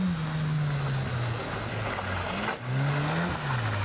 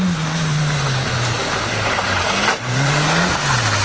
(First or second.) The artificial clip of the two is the second